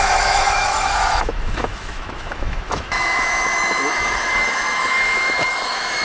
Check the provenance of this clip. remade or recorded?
remade